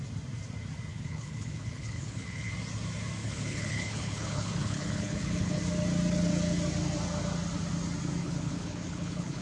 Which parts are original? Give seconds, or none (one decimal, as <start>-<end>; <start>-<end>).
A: 0.0-0.9; 2.5-3.2; 5.6-8.2